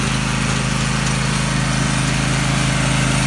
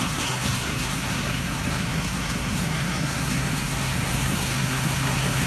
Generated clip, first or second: second